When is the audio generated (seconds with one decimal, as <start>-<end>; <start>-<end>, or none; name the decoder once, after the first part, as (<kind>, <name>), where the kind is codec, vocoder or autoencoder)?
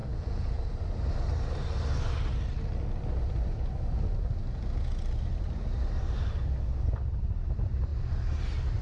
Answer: 0.0-0.6 (vocoder, Vocos)